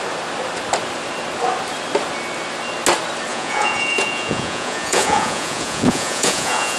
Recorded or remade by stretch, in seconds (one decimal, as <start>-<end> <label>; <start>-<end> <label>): 0.0-3.3 recorded; 3.3-6.8 remade